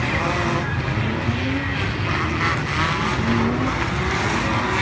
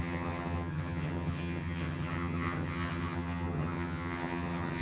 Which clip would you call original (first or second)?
first